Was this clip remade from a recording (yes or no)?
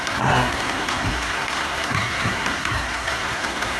yes